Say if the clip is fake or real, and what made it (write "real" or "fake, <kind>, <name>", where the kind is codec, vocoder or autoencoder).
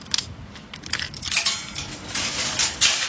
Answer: real